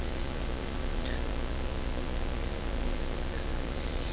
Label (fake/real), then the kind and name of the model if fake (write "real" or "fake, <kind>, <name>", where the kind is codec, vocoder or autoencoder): fake, vocoder, Vocos